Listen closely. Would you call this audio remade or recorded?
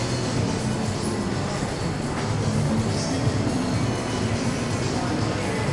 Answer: recorded